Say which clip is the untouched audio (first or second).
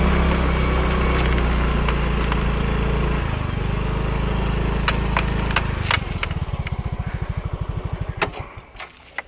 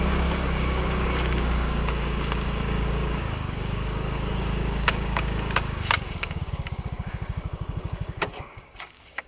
first